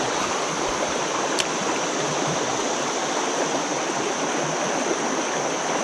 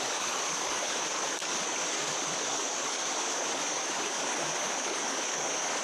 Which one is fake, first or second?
second